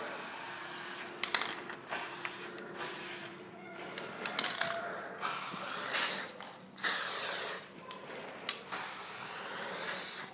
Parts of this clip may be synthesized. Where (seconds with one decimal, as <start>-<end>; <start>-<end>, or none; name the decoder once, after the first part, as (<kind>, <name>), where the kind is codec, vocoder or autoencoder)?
3.2-3.8 (vocoder, Vocos)